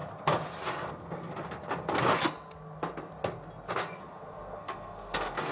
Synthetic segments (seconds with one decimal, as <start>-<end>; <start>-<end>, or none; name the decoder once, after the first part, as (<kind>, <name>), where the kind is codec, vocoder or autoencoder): 0.9-1.3 (codec, SNAC); 4.0-5.5